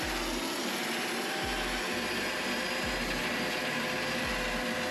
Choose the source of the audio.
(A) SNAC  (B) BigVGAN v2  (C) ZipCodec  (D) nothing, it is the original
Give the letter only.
D